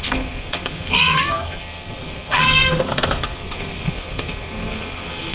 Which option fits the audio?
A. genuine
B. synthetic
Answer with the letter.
B